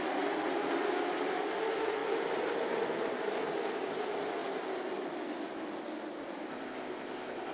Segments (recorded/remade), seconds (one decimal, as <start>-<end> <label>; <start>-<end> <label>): 0.0-6.5 recorded; 6.5-7.5 remade